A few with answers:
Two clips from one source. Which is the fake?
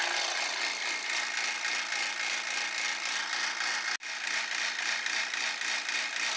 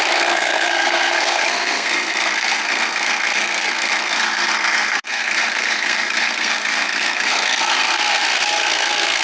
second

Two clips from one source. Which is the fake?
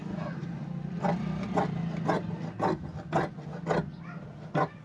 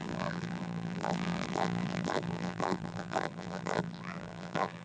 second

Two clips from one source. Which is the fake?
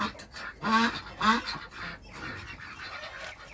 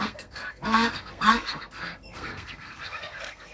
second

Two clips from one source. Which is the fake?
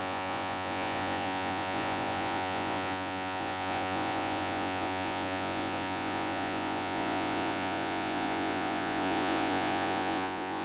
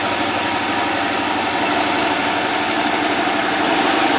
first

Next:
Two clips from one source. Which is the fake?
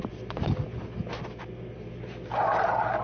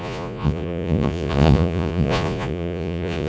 second